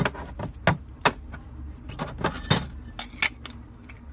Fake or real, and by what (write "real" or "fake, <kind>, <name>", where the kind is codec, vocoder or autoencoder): real